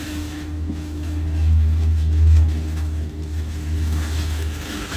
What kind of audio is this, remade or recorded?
remade